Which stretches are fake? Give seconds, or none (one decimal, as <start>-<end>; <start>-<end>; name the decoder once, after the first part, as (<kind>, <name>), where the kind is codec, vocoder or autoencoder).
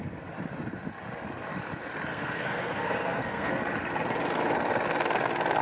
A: 2.1-3.5 (codec, SNAC)